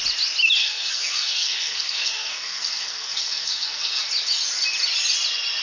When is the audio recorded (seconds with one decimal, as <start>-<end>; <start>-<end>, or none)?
0.0-0.6; 4.0-5.6

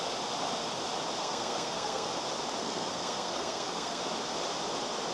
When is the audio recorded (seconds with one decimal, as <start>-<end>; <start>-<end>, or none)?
0.0-1.2; 2.1-2.6; 4.0-5.1

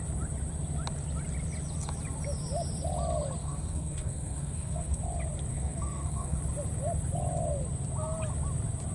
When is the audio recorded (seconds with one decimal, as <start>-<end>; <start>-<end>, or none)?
0.0-3.4; 5.0-5.5; 6.4-8.9

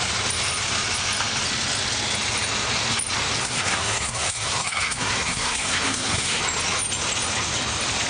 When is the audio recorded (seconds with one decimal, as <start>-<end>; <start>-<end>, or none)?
0.0-3.4; 6.4-8.1

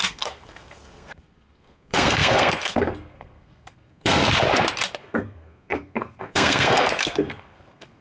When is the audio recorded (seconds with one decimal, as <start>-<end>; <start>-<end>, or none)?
4.2-5.0

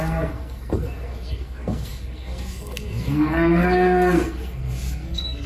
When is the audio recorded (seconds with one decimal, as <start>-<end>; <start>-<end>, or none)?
none

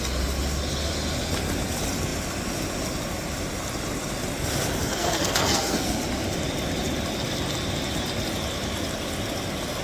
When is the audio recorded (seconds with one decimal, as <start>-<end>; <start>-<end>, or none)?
0.0-4.9; 6.0-9.8

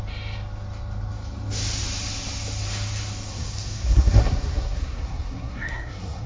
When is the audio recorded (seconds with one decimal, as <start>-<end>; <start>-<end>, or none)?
0.0-3.3